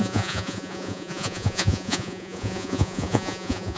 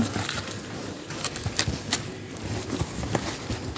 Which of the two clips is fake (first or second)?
first